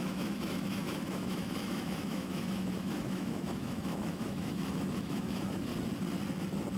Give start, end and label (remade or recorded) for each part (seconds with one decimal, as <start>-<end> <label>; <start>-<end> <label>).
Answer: 0.0-5.7 remade; 5.7-6.8 recorded